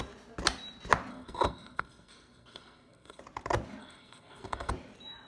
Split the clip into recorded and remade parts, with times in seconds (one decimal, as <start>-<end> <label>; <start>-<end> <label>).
0.0-1.1 recorded; 1.1-3.2 remade; 3.2-3.8 recorded; 3.8-4.7 remade; 4.7-5.3 recorded